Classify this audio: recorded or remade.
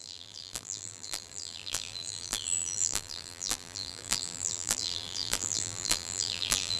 remade